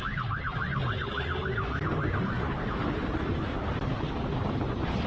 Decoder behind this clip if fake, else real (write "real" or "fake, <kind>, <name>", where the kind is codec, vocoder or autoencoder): real